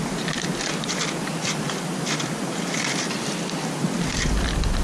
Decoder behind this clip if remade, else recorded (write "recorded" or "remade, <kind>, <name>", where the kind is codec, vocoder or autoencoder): remade, vocoder, BigVGAN v2